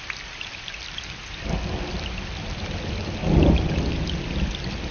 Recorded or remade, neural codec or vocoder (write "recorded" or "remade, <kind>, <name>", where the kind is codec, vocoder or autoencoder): recorded